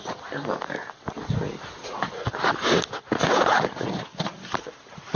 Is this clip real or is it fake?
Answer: real